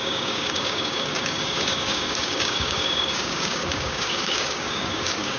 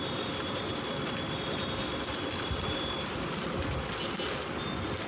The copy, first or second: first